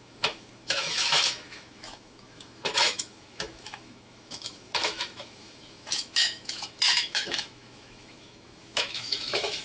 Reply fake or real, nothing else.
fake